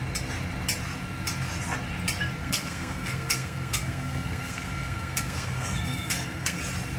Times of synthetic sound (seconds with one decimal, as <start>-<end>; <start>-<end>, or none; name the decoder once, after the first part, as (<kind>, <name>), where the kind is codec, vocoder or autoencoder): 2.4-6.6 (codec, SNAC)